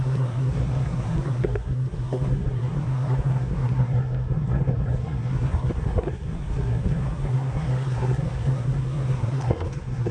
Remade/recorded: remade